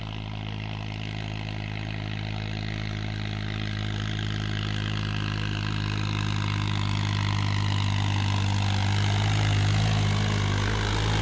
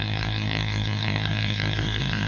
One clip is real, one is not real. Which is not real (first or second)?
second